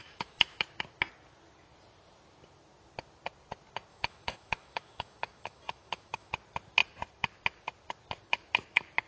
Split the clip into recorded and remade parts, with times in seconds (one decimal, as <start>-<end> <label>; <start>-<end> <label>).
0.0-0.6 remade; 0.6-3.9 recorded; 3.9-6.3 remade; 6.3-9.1 recorded